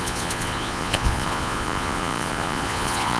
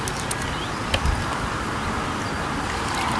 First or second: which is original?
second